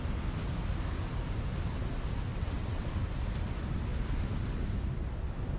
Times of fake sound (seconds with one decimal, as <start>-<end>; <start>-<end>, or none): 2.3-2.9